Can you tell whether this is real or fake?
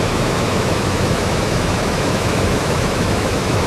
fake